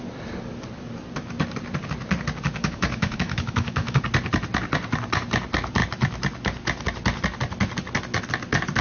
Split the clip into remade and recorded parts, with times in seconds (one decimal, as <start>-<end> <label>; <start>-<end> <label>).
0.0-2.6 recorded; 2.6-4.0 remade; 4.0-8.8 recorded